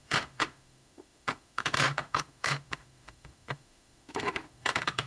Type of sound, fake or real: fake